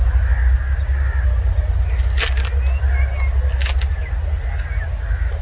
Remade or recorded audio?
recorded